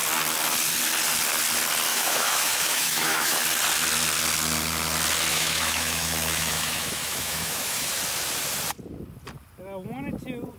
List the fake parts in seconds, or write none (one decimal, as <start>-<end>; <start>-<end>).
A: 1.9-3.4; 5.3-7.9